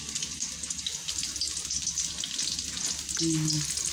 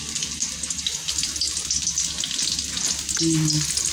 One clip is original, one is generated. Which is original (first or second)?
second